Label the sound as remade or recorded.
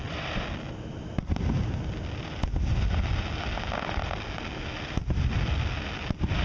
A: recorded